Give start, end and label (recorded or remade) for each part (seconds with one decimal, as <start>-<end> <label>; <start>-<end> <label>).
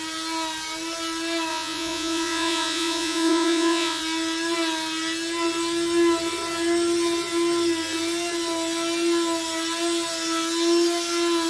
0.0-1.5 recorded; 1.5-4.0 remade; 4.0-11.5 recorded